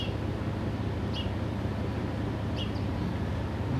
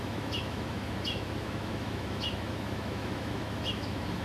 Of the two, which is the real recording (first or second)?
first